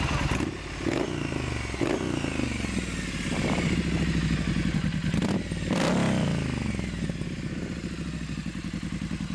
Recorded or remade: recorded